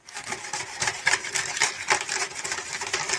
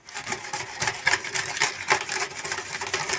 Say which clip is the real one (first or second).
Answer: second